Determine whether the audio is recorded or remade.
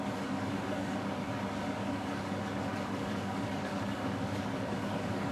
remade